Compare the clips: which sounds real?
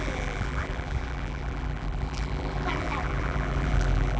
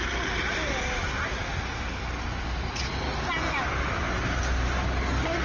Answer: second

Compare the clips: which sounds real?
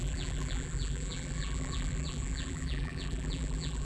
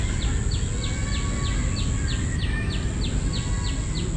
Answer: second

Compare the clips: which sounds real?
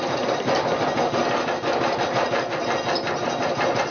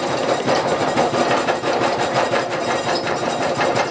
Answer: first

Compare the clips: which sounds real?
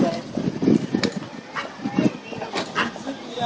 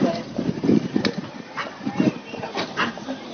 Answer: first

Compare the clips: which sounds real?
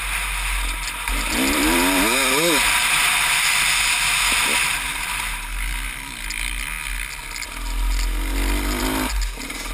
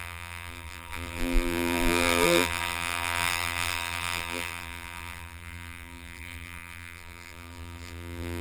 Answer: first